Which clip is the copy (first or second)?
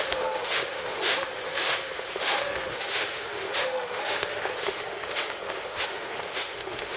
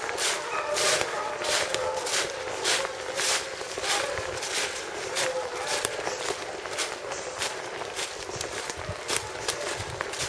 first